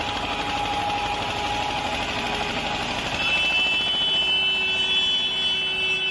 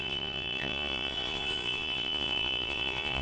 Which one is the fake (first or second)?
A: second